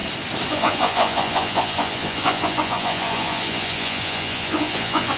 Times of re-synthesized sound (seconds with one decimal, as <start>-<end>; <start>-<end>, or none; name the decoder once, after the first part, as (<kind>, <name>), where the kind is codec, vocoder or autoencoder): 0.5-5.2 (vocoder, Vocos)